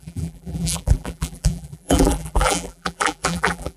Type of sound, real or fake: fake